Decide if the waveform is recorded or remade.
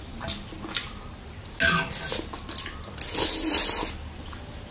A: recorded